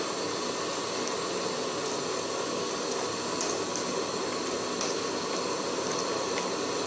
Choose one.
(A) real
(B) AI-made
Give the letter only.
A